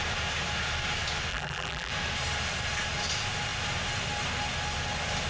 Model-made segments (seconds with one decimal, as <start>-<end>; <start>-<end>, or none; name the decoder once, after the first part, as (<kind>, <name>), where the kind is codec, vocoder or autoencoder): 1.3-1.9 (vocoder, BigVGAN v2)